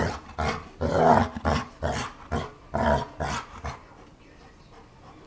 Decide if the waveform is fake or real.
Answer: real